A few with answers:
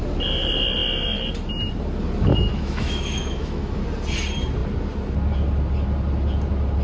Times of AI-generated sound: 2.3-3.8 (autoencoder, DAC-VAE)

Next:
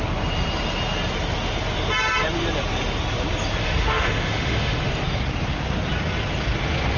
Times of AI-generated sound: 3.6-4.9 (autoencoder, DAC-VAE)

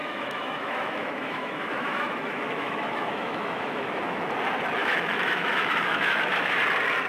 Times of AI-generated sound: 0.0-4.3 (autoencoder, DAC-VAE); 4.8-6.6

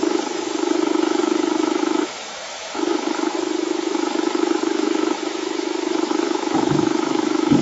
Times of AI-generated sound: 0.0-7.6 (autoencoder, DAC-VAE)

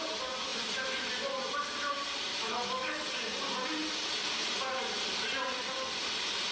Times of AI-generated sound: 2.3-3.1 (autoencoder, DAC-VAE)

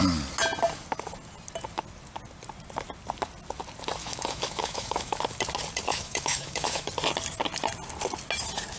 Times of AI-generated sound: 4.0-5.2 (autoencoder, DAC-VAE); 5.9-6.9

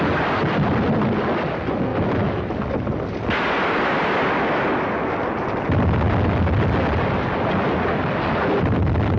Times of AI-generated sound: 1.9-2.5 (autoencoder, DAC-VAE)

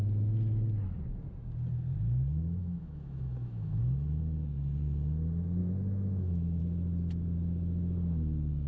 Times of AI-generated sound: 2.6-3.8 (autoencoder, DAC-VAE); 5.6-6.6